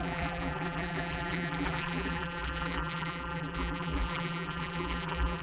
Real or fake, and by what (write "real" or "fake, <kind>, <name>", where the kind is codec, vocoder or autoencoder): fake, vocoder, BigVGAN v2